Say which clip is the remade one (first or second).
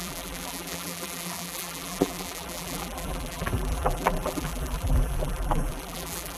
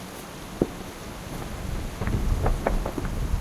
first